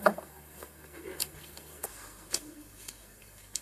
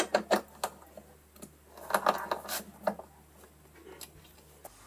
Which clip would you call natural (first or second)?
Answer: second